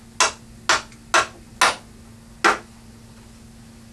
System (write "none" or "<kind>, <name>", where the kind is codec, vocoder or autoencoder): none